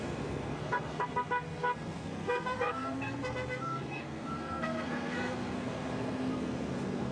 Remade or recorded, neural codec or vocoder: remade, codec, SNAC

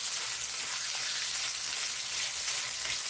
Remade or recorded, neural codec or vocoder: recorded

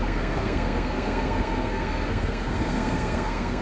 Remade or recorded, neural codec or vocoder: remade, codec, SNAC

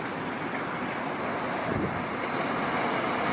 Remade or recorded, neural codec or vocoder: recorded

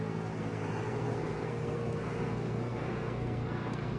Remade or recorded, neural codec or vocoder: remade, codec, SNAC